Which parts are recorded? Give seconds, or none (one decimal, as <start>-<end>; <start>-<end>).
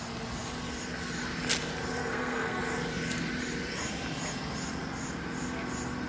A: 0.0-2.0; 2.6-6.1